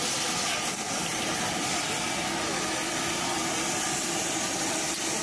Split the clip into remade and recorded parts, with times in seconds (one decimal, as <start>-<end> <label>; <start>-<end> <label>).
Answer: 0.0-5.2 recorded